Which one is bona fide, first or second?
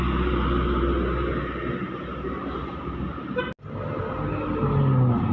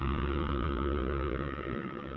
first